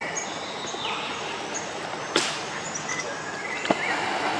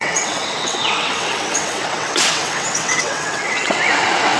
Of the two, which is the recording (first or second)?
first